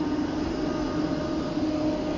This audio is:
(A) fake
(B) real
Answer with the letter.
B